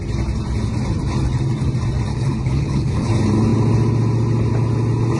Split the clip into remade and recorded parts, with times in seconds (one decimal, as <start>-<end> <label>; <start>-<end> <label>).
0.0-2.1 recorded; 2.1-3.1 remade; 3.1-5.2 recorded